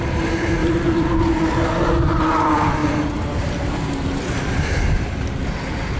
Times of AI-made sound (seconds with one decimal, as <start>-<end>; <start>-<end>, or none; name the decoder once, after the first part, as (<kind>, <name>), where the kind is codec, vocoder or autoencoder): none